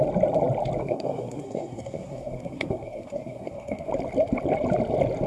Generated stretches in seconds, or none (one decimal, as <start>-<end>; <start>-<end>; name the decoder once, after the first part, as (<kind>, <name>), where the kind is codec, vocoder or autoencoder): 0.8-3.9 (codec, SNAC)